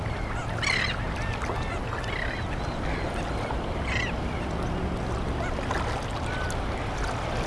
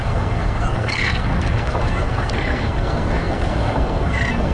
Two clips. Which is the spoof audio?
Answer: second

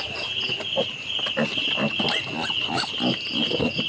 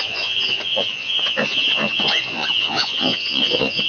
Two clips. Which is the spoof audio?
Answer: second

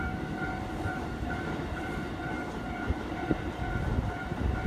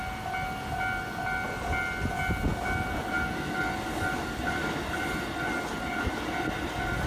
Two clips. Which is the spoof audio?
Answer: first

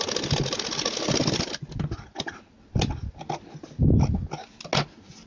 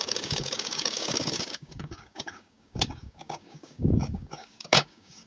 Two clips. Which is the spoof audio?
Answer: second